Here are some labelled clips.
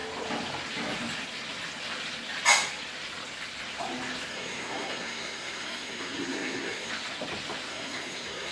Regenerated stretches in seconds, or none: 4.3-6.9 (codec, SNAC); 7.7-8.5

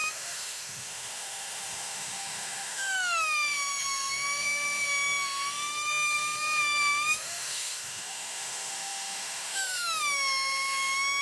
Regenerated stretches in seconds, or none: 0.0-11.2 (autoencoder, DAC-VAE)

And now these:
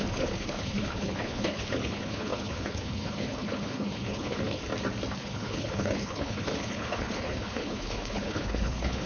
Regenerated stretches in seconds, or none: 0.0-4.6 (codec, HILCodec); 5.2-9.1